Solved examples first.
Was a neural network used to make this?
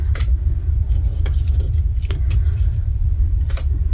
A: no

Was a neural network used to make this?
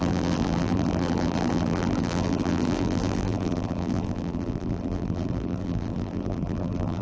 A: yes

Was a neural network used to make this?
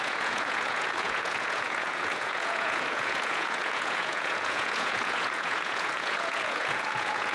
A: yes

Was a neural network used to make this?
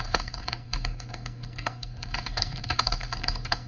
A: yes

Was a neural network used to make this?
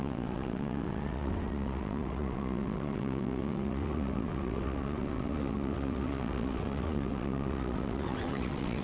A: yes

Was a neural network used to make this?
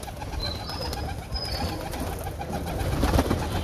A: no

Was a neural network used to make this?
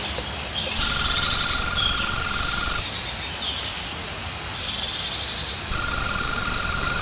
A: no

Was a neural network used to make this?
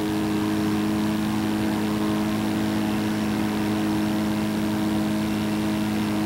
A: no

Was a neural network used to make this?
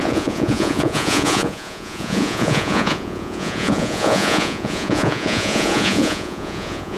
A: yes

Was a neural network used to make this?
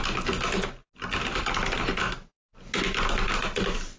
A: no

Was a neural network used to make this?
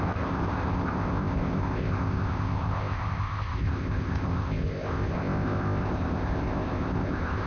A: yes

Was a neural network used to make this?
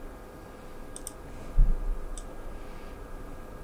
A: no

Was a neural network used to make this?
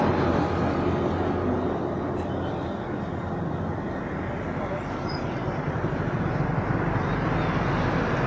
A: no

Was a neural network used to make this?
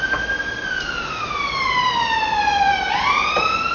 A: no